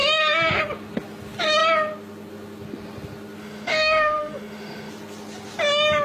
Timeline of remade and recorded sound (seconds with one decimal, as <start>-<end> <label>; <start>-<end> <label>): 0.0-3.4 recorded; 3.4-4.9 remade; 4.9-6.0 recorded